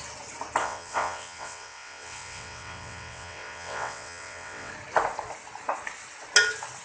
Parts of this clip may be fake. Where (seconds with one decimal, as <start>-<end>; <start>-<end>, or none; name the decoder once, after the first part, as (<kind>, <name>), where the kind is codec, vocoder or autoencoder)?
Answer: 0.6-4.7 (vocoder, WaveNeXt)